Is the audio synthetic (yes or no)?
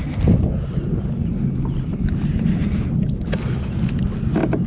no